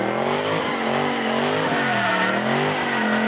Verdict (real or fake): real